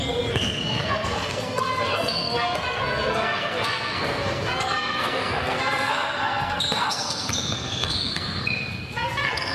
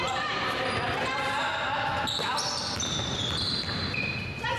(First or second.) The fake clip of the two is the first